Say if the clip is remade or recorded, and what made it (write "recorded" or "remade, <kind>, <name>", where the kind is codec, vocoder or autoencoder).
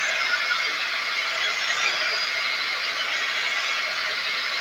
recorded